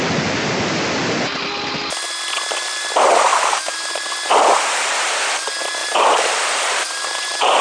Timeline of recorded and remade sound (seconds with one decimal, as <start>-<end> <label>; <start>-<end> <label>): 0.0-3.3 recorded; 3.3-4.1 remade; 4.1-5.8 recorded; 5.8-7.6 remade

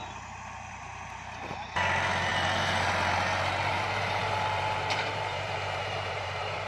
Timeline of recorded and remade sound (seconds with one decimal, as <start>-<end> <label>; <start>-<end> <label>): 0.0-2.3 recorded; 2.3-2.9 remade; 2.9-3.7 recorded; 3.7-6.7 remade

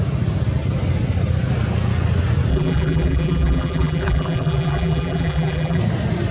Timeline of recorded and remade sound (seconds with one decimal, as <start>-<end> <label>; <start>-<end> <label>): 0.0-2.5 recorded; 2.5-5.8 remade; 5.8-6.3 recorded

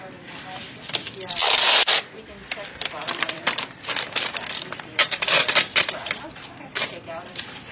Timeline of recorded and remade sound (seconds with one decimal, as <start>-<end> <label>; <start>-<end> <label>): 0.0-7.7 remade

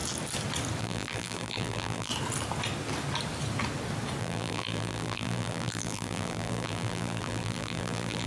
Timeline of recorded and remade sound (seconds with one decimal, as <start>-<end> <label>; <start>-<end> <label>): 0.0-0.8 recorded; 0.8-2.1 remade; 2.1-4.2 recorded; 4.2-8.3 remade

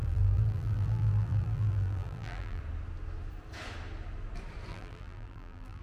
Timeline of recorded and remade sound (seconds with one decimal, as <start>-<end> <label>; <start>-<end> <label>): 0.0-2.6 remade; 2.6-4.7 recorded; 4.7-5.8 remade

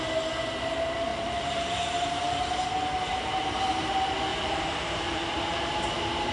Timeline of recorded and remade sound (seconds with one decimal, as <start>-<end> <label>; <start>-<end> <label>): 0.0-1.1 recorded; 1.1-2.5 remade; 2.5-3.1 recorded; 3.1-3.8 remade; 3.8-4.3 recorded; 4.3-5.8 remade; 5.8-6.3 recorded